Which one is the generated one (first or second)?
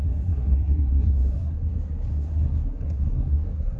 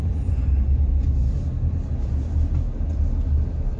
first